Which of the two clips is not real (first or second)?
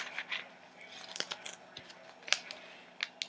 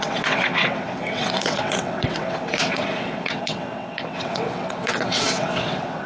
second